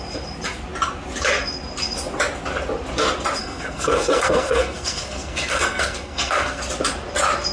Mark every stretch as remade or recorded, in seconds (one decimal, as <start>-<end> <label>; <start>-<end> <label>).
0.0-3.4 recorded; 3.4-6.6 remade; 6.6-7.5 recorded